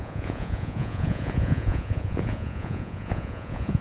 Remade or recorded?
remade